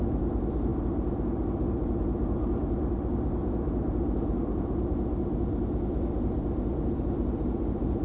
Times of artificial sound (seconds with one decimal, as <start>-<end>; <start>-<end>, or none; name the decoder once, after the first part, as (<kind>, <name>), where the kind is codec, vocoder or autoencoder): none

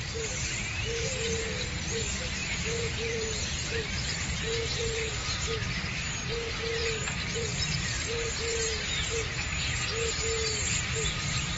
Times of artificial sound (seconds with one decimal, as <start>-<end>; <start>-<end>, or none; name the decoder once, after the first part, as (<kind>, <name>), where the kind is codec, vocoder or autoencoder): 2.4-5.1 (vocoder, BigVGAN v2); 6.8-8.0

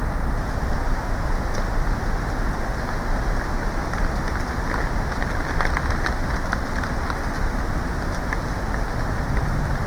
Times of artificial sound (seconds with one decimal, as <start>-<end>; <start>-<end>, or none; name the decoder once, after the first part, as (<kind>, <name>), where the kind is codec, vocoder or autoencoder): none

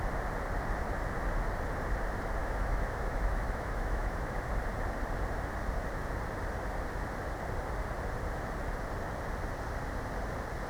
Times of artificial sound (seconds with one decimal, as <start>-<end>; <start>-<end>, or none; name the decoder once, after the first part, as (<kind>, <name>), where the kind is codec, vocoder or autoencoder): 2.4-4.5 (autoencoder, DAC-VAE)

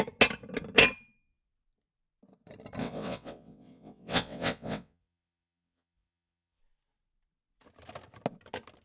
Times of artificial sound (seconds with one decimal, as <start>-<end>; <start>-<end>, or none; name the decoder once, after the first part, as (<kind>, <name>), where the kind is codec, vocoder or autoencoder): 2.8-6.6 (vocoder, WaveNeXt)

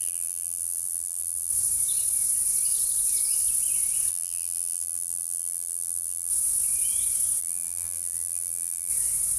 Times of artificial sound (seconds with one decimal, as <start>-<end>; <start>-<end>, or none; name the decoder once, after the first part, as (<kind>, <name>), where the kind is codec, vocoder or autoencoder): 0.0-1.5 (vocoder, BigVGAN v2); 4.1-6.3; 7.4-8.9